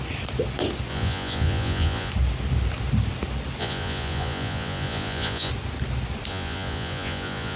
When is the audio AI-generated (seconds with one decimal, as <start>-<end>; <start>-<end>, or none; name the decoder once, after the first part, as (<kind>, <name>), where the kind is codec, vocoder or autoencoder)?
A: 0.9-2.1 (vocoder, Vocos); 3.6-5.5; 6.3-7.6